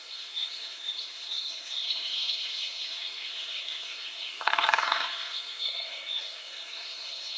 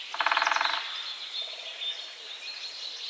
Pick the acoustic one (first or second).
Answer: second